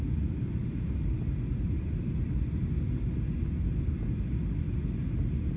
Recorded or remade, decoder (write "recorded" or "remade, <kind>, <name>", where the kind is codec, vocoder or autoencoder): recorded